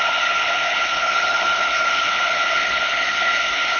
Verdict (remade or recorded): remade